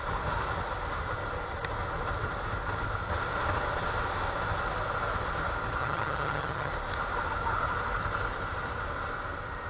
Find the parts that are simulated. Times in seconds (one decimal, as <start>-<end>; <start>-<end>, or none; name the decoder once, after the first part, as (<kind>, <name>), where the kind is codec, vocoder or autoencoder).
5.8-6.7 (vocoder, HiFi-GAN)